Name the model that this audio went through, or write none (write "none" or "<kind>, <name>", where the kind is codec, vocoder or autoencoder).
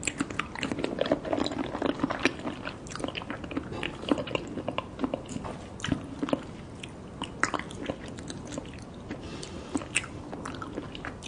none